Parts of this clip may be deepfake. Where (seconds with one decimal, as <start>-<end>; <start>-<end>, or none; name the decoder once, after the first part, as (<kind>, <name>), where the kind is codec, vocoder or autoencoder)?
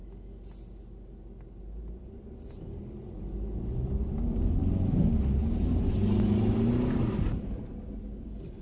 none